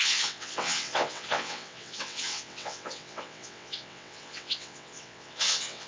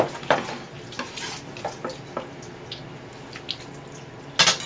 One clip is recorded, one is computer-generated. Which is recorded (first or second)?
second